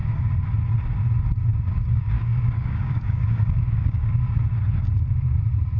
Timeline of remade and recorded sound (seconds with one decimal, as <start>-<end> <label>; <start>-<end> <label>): 0.0-1.5 recorded; 1.5-4.3 remade; 4.3-5.8 recorded